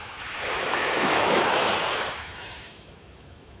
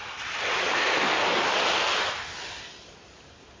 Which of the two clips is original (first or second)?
second